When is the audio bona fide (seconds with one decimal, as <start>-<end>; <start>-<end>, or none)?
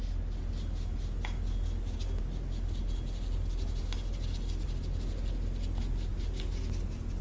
0.0-7.2